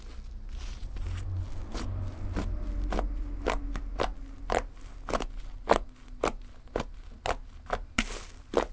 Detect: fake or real real